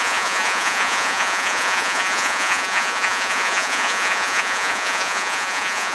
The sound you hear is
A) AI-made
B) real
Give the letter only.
A